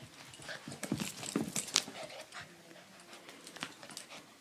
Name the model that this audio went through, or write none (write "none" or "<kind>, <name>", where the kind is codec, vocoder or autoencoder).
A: none